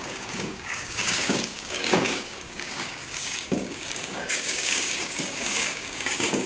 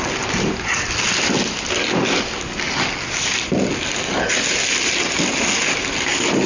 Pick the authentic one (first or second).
second